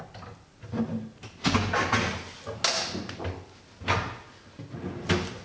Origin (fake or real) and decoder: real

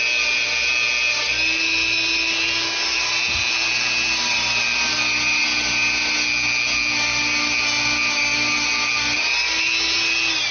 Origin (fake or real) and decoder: real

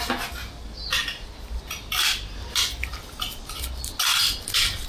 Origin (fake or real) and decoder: real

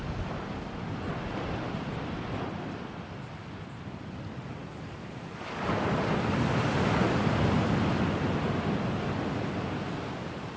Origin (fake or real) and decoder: real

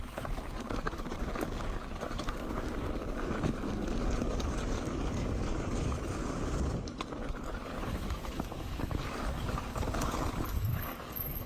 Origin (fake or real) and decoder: fake, codec, DAC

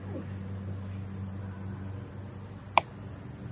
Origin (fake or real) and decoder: real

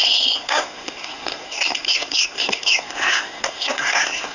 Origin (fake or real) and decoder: fake, codec, SNAC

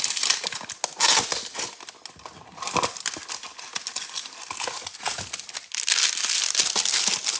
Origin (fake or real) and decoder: real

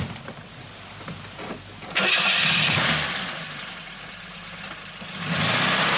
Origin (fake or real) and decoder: real